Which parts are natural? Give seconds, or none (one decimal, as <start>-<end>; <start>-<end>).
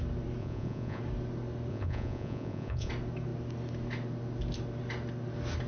0.0-0.4; 1.0-1.7; 2.9-5.7